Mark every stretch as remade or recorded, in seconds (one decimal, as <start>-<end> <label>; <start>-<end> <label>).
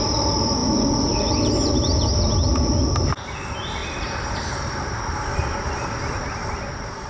0.0-3.8 recorded; 3.8-5.0 remade; 5.0-6.4 recorded; 6.4-7.1 remade